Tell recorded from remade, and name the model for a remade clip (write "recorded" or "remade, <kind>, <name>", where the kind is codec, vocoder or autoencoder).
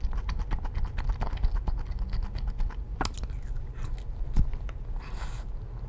recorded